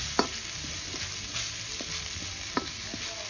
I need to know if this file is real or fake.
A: real